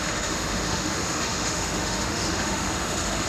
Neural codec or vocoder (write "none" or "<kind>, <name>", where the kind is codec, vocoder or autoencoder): autoencoder, DAC-VAE